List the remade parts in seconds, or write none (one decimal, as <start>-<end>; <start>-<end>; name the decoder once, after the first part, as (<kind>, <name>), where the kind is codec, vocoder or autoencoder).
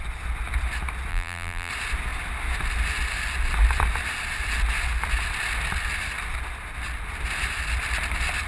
1.1-1.7 (vocoder, BigVGAN v2)